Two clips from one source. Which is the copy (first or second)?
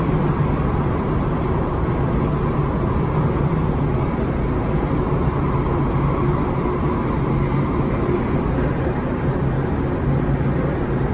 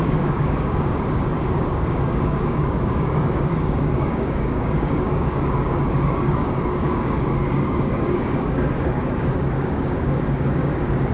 second